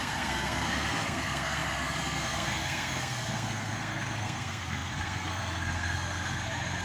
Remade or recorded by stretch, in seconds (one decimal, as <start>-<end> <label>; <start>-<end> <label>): 0.0-6.8 remade